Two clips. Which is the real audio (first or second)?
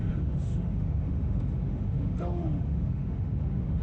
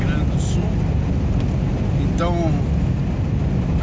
second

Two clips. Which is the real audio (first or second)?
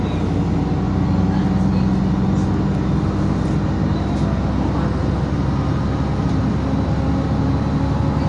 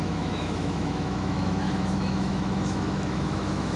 first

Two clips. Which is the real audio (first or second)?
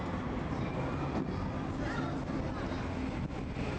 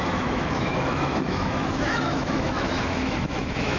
first